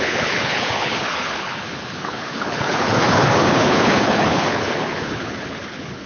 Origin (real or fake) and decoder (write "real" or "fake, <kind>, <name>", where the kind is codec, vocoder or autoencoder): fake, codec, HILCodec